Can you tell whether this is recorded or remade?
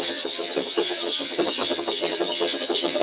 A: remade